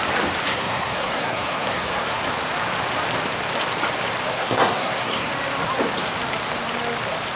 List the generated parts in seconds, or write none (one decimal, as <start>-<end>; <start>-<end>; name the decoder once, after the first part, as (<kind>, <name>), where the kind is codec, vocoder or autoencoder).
0.5-2.2 (codec, SNAC); 4.3-5.3